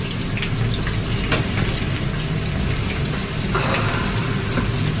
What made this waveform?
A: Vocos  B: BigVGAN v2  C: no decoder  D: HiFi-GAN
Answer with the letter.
C